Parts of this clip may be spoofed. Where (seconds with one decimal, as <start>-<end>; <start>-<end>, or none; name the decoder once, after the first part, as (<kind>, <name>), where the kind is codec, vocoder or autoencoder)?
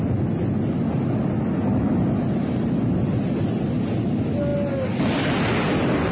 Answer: none